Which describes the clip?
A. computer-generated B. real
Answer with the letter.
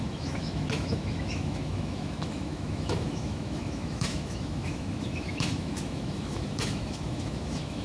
A